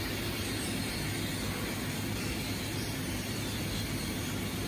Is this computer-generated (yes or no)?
no